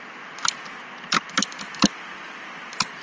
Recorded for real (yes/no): yes